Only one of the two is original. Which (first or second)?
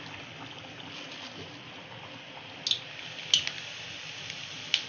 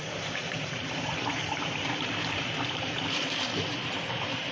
first